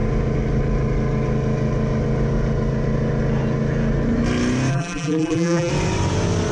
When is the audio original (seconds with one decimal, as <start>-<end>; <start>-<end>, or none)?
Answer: 0.0-4.7; 5.7-6.5